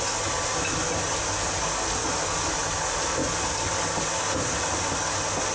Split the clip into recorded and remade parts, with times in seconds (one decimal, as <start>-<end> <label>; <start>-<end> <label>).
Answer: 0.0-5.5 recorded